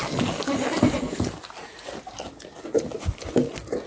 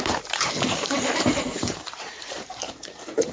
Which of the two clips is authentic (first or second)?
first